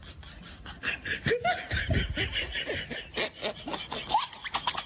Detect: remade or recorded recorded